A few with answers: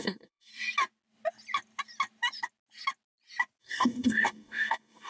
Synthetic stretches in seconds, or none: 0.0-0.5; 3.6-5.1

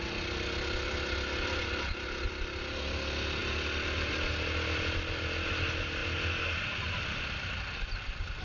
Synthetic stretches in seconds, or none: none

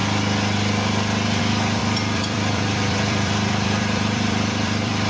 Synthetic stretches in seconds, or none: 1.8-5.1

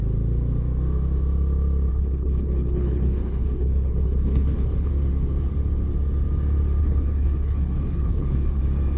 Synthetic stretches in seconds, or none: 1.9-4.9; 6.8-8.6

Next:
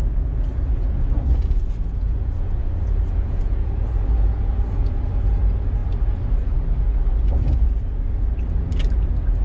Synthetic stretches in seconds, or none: 0.0-5.0